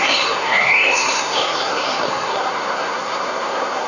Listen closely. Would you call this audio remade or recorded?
remade